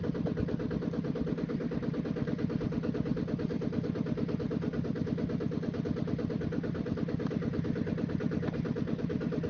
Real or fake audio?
real